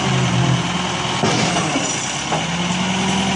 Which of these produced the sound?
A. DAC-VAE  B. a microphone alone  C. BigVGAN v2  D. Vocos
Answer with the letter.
B